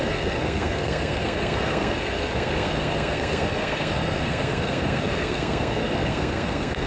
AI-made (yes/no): yes